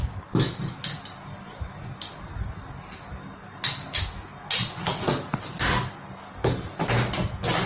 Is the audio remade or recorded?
recorded